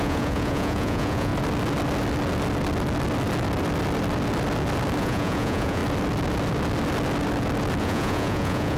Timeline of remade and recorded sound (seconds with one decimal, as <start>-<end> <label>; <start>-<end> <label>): 0.0-1.3 remade; 1.3-5.0 recorded; 5.0-5.8 remade; 5.8-7.8 recorded; 7.8-8.8 remade